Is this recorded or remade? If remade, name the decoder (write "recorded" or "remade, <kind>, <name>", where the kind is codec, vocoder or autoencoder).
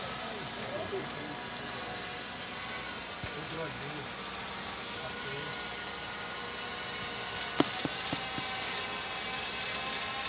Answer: recorded